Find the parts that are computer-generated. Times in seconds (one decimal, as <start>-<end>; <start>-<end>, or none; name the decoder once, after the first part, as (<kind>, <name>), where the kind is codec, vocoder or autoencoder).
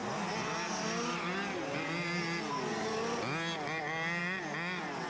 none